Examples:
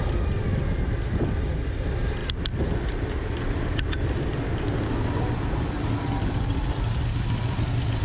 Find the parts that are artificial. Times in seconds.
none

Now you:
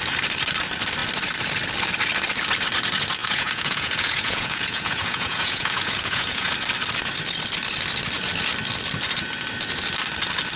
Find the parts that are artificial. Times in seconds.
3.2-6.5 (vocoder, Vocos)